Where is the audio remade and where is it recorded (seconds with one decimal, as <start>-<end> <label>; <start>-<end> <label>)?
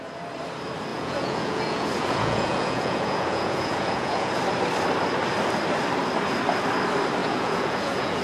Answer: 0.0-0.9 recorded; 0.9-4.3 remade; 4.3-7.2 recorded; 7.2-8.2 remade